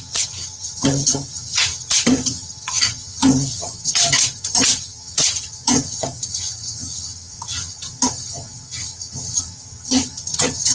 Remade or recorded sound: remade